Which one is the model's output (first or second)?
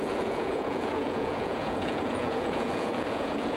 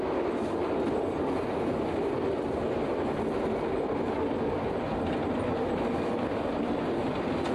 first